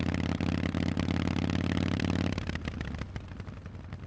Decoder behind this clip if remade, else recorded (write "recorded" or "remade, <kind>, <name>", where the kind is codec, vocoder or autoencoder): recorded